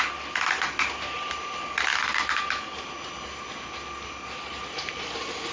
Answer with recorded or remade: recorded